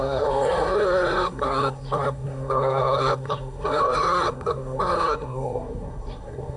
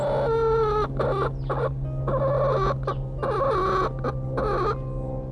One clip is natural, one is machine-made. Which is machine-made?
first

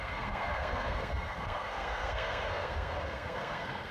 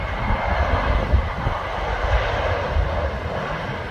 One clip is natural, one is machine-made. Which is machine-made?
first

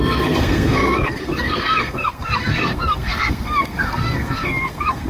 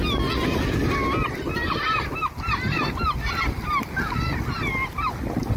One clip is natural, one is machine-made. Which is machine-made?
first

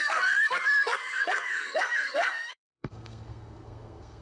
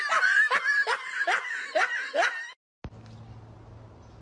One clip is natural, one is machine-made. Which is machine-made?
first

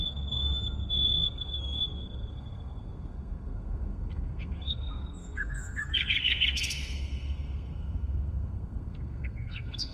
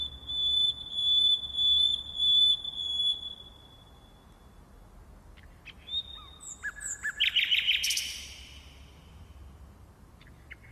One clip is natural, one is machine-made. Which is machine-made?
first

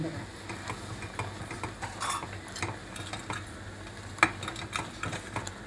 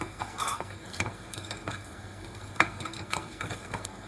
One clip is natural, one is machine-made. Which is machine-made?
second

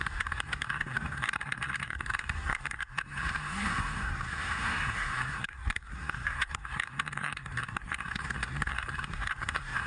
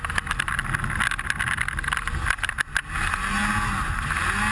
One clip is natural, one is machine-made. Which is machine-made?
first